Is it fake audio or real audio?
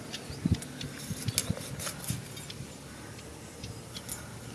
real